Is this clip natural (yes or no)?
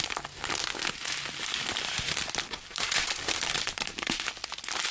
yes